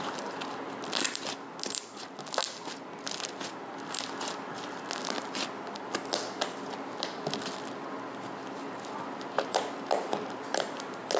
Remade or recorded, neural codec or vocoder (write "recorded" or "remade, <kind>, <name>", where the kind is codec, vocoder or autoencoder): recorded